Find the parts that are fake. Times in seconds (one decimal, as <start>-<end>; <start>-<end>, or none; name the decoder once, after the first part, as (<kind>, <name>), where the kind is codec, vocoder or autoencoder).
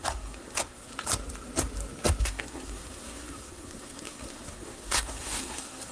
0.0-0.9 (codec, SNAC); 2.2-5.9